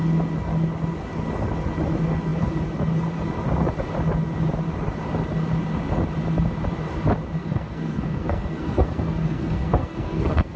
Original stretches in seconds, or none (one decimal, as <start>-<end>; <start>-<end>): 0.0-7.4